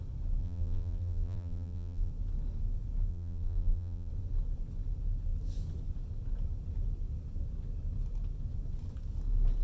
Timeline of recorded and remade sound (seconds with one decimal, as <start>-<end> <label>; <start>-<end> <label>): 0.0-0.4 recorded; 0.4-2.1 remade; 2.1-3.1 recorded; 3.1-4.1 remade; 4.1-9.6 recorded